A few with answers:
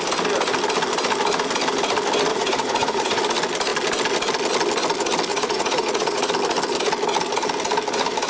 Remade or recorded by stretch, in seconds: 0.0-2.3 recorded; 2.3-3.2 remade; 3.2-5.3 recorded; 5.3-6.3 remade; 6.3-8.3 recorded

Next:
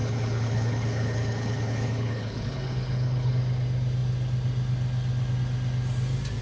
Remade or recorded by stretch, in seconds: 0.0-3.3 remade; 3.3-6.4 recorded

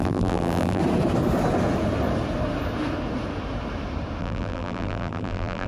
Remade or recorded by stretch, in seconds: 0.0-0.8 remade; 0.8-4.2 recorded; 4.2-5.7 remade

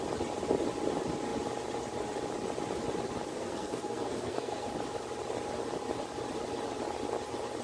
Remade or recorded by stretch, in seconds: 0.0-3.3 recorded; 3.3-4.7 remade; 4.7-7.6 recorded

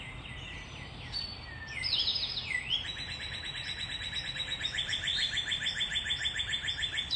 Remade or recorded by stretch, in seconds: 0.0-7.2 recorded

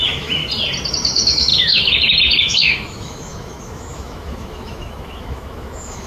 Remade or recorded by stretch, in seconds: 0.0-0.4 remade; 0.4-0.9 recorded; 0.9-6.1 remade